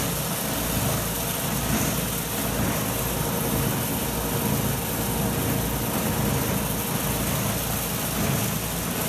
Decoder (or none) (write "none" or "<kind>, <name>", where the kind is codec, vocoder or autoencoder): none